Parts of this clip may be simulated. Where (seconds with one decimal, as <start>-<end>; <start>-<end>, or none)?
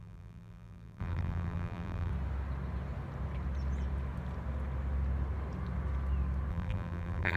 0.0-2.1; 6.5-7.4